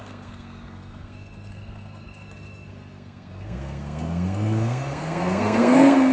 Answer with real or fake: fake